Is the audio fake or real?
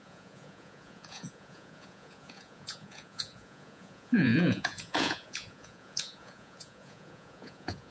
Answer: fake